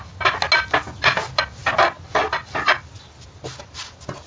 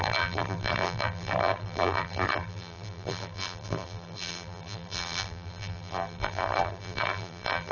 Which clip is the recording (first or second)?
first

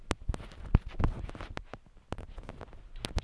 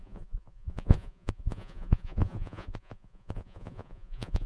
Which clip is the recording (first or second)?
first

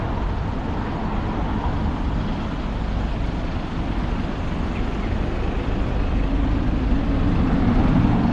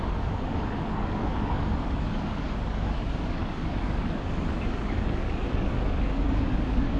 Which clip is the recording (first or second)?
first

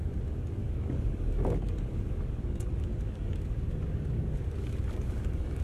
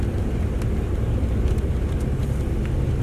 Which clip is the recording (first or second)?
second